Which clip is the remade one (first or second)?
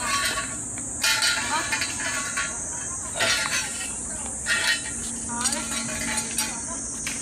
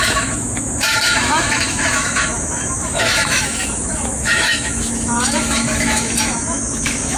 second